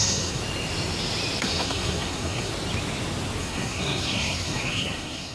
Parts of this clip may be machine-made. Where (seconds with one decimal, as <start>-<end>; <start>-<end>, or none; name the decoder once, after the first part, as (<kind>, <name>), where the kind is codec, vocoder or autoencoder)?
0.0-0.4 (codec, SNAC); 1.4-2.5; 3.4-5.3